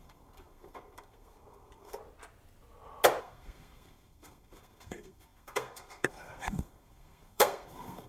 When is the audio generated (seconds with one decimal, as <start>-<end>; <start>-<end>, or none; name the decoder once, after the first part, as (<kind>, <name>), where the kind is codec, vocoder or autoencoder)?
0.0-2.0 (codec, SNAC); 3.2-8.1